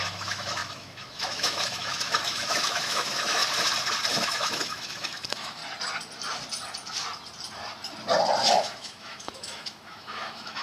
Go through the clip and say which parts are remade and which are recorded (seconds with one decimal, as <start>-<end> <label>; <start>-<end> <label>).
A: 0.0-3.4 remade; 3.4-4.1 recorded; 4.1-5.6 remade; 5.6-8.6 recorded; 8.6-10.6 remade